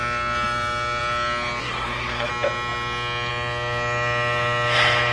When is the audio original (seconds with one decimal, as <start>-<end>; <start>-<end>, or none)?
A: 0.0-1.6; 2.3-5.1